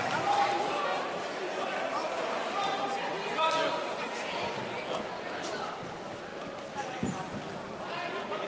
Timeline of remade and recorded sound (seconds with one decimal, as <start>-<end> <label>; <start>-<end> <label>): 0.0-6.3 recorded; 6.3-7.9 remade; 7.9-8.5 recorded